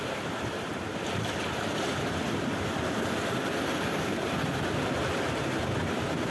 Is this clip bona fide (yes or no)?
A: yes